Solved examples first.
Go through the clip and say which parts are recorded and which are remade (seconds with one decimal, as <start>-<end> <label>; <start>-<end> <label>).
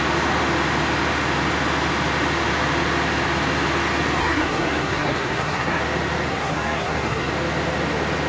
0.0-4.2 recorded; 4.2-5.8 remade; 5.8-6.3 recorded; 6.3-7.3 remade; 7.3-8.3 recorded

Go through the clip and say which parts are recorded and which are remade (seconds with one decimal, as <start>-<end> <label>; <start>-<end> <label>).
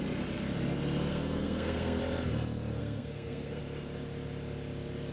0.0-1.1 recorded; 1.1-2.0 remade; 2.0-2.8 recorded; 2.8-3.6 remade; 3.6-5.1 recorded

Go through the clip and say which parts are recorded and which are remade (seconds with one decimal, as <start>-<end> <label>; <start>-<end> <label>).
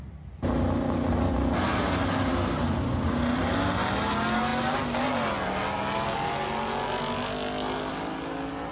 0.0-8.7 recorded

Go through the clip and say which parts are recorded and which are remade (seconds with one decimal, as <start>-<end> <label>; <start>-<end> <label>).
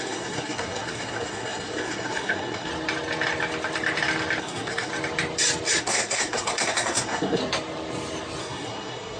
0.0-2.7 remade; 2.7-4.4 recorded; 4.4-4.9 remade; 4.9-5.8 recorded; 5.8-7.4 remade; 7.4-8.4 recorded; 8.4-9.2 remade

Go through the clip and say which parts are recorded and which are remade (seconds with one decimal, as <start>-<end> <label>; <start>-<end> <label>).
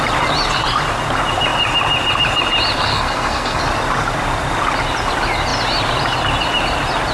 0.0-2.9 recorded; 2.9-3.6 remade; 3.6-7.1 recorded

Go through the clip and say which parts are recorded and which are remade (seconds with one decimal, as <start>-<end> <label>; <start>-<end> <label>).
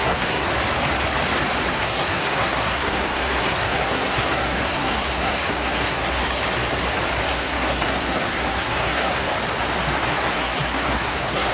0.0-0.6 remade; 0.6-1.7 recorded; 1.7-6.4 remade; 6.4-7.3 recorded; 7.3-9.3 remade; 9.3-10.1 recorded; 10.1-11.5 remade